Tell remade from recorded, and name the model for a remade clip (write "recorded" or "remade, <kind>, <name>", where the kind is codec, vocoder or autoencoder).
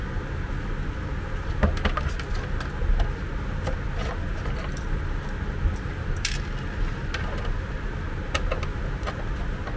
recorded